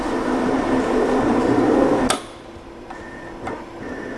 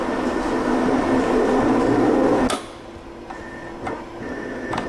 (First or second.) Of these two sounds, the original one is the second